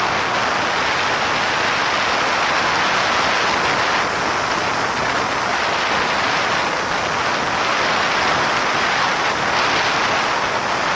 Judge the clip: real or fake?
real